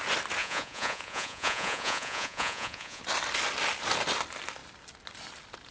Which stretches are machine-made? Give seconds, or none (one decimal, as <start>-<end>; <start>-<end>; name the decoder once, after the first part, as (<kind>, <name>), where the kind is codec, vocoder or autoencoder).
0.4-3.0 (vocoder, Vocos)